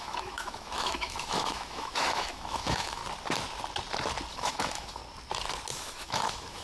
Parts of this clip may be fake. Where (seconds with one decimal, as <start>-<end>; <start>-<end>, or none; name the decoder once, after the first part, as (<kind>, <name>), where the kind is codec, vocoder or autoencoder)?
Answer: 0.0-3.0 (autoencoder, DAC-VAE); 4.3-5.0; 5.7-6.6